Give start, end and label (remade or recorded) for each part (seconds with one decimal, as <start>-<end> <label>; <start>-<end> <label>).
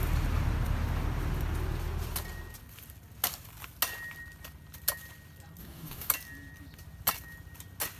0.0-5.6 recorded; 5.6-6.1 remade; 6.1-8.0 recorded